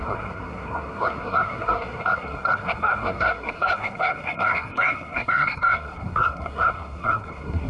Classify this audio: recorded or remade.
remade